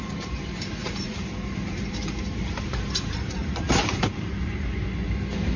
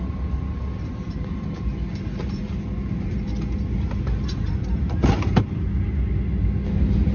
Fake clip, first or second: first